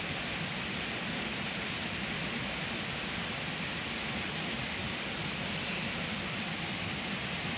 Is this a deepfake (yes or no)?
no